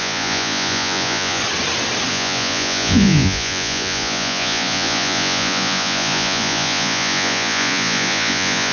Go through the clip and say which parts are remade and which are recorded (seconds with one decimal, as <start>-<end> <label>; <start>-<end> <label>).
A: 0.0-1.4 remade; 1.4-2.1 recorded; 2.1-8.7 remade